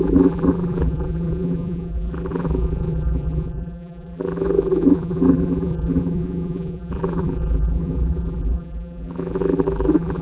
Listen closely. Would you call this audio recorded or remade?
remade